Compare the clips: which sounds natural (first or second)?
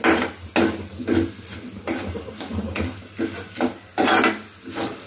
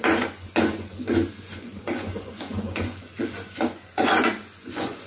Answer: first